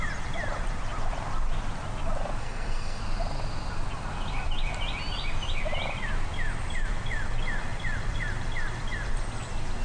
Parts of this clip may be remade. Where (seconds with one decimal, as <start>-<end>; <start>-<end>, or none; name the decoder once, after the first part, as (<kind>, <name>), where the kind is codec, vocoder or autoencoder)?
2.4-3.0 (codec, SNAC)